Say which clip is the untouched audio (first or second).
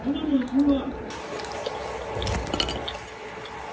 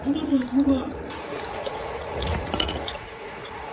first